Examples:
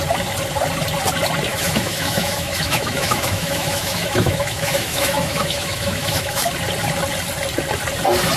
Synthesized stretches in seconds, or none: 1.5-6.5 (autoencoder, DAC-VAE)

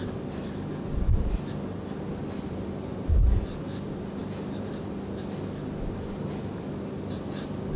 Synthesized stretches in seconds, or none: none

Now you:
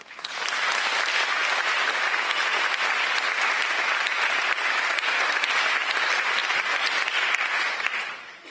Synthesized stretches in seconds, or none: none

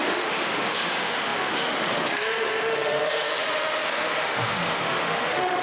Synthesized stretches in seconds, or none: 0.0-5.6 (autoencoder, DAC-VAE)

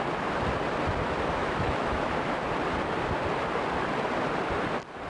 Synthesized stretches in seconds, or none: 1.4-2.0 (autoencoder, DAC-VAE)

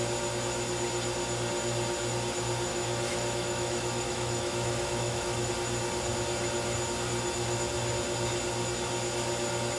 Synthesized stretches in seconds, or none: 2.7-5.5 (autoencoder, DAC-VAE)